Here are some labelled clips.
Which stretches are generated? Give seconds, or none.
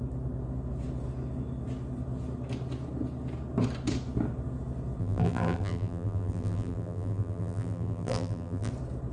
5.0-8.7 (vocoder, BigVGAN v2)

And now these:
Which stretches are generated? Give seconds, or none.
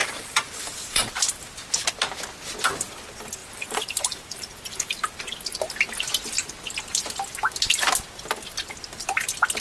0.0-1.5 (vocoder, BigVGAN v2); 3.4-5.2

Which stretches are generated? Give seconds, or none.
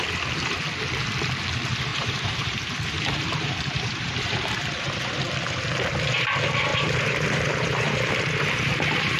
1.9-5.2 (vocoder, BigVGAN v2); 6.7-8.7